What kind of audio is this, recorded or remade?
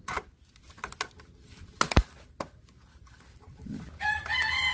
recorded